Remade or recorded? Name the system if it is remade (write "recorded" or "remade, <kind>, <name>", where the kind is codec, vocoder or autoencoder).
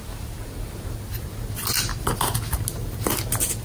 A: recorded